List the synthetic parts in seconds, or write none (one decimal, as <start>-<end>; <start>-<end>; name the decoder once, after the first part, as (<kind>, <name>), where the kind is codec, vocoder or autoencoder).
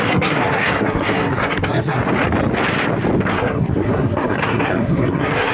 0.0-2.0 (codec, SNAC); 3.3-5.5